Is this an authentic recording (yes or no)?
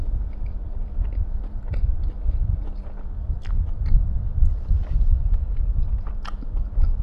no